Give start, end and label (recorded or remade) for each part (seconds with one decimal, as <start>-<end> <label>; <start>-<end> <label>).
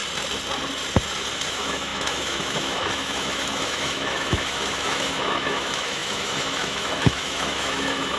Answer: 0.0-1.5 recorded; 1.5-8.2 remade